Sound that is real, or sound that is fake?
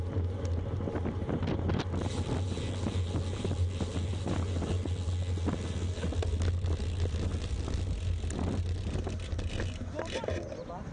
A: real